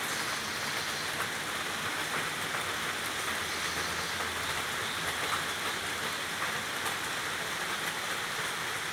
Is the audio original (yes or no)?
yes